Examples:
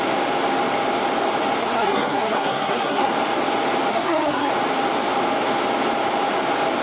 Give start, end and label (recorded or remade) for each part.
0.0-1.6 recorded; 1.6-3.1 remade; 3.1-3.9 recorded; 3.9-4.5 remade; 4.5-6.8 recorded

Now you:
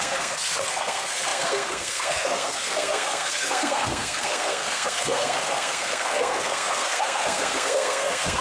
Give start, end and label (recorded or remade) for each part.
0.0-8.4 remade

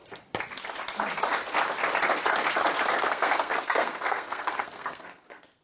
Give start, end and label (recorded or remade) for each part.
0.0-3.0 recorded; 3.0-5.6 remade